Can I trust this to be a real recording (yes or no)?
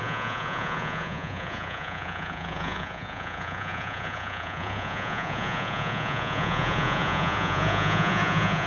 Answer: no